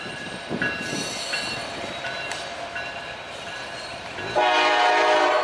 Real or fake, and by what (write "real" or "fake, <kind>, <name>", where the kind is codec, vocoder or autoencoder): real